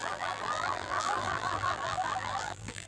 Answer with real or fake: fake